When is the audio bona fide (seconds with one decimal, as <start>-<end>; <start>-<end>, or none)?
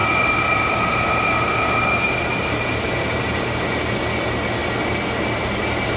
3.6-6.0